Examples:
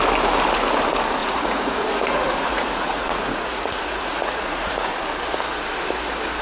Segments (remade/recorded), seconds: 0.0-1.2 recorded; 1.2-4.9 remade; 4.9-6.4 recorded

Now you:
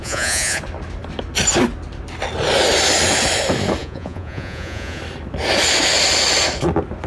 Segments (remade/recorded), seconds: 0.0-0.6 remade; 0.6-3.8 recorded; 3.8-5.0 remade; 5.0-7.1 recorded

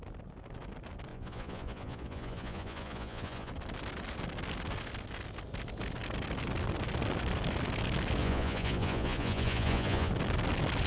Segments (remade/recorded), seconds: 0.0-1.1 recorded; 1.1-3.5 remade; 3.5-8.2 recorded; 8.2-10.1 remade; 10.1-10.9 recorded

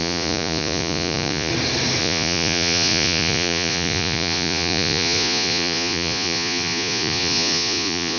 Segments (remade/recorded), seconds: 0.0-1.5 remade; 1.5-2.0 recorded; 2.0-8.2 remade